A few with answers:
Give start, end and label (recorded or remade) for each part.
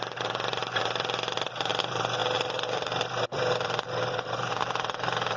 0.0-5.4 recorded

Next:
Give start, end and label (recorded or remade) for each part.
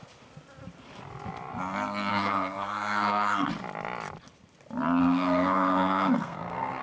0.0-2.1 recorded; 2.1-3.5 remade; 3.5-5.0 recorded; 5.0-6.8 remade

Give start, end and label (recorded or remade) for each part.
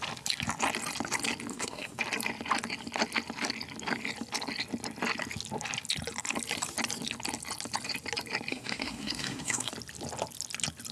0.0-1.5 recorded; 1.5-2.0 remade; 2.0-8.5 recorded; 8.5-9.7 remade; 9.7-10.9 recorded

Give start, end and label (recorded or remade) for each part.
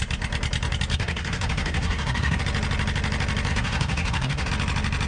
0.0-0.9 recorded; 0.9-2.4 remade; 2.4-3.5 recorded; 3.5-4.5 remade; 4.5-5.1 recorded